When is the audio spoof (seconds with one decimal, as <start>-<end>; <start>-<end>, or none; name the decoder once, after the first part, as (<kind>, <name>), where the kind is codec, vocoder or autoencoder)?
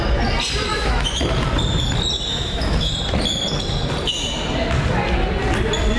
0.7-1.2 (autoencoder, DAC-VAE); 2.3-2.9